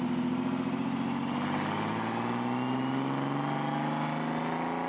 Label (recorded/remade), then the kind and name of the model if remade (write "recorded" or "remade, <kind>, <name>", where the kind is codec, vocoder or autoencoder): recorded